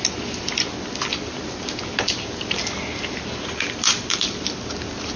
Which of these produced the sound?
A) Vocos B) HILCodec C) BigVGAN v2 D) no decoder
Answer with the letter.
D